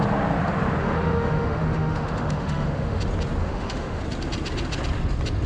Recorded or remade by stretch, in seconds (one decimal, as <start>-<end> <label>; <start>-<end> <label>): 0.0-0.8 recorded; 0.8-3.0 remade; 3.0-3.4 recorded; 3.4-4.0 remade; 4.0-5.5 recorded